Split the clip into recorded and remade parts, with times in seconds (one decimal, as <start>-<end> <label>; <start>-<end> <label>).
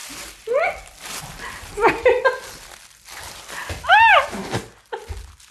0.0-1.2 remade; 1.2-5.5 recorded